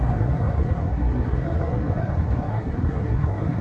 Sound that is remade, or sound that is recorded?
remade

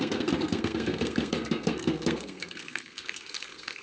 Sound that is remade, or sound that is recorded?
remade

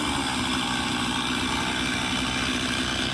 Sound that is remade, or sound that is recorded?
recorded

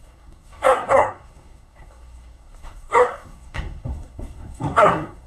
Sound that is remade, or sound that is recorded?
remade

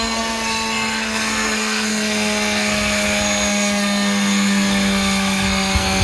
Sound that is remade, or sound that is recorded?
remade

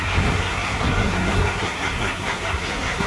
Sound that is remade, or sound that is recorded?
remade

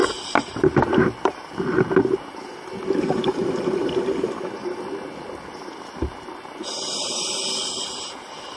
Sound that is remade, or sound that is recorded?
recorded